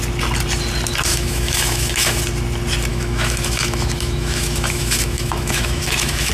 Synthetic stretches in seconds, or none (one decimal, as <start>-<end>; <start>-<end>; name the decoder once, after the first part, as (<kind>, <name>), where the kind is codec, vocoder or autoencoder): 1.1-2.2 (autoencoder, DAC-VAE); 2.9-6.3